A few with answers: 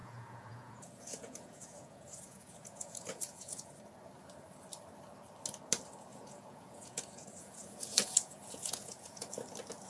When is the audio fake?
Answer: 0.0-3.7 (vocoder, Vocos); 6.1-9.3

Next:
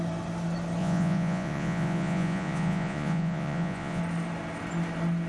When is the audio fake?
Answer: 0.8-4.0 (vocoder, Vocos)

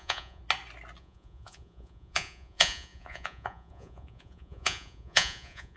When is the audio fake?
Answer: 0.0-0.4 (vocoder, Vocos); 1.0-5.8

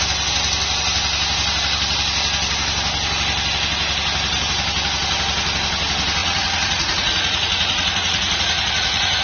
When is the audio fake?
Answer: 6.2-9.2 (vocoder, Vocos)

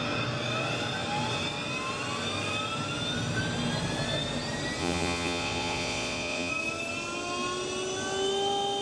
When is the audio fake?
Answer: 4.8-6.5 (vocoder, Vocos)

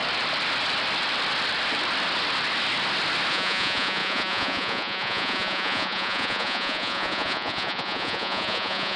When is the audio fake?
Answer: 3.3-9.0 (vocoder, Vocos)